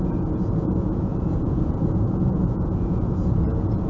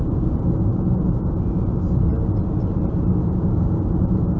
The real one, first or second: second